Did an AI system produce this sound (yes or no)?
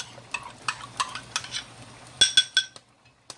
no